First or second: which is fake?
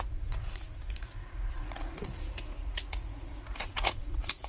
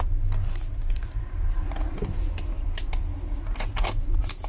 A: first